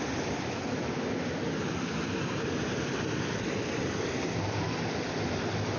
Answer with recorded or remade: remade